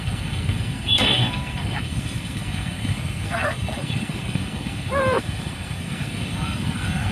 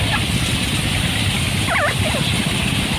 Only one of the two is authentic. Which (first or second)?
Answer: second